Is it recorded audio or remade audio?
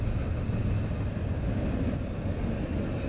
recorded